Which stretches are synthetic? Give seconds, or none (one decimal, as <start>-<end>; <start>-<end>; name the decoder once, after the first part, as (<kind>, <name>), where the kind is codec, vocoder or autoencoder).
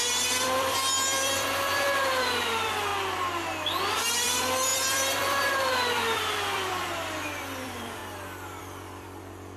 0.0-2.9 (vocoder, BigVGAN v2); 3.9-8.0; 8.6-9.6